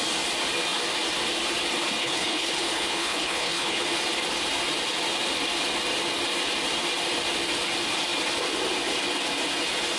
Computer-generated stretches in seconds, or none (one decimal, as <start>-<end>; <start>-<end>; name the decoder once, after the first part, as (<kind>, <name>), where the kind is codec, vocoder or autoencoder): 2.0-3.8 (codec, HILCodec)